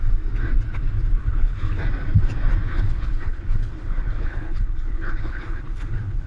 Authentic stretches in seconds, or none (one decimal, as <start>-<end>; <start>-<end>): 0.0-1.2; 1.8-2.7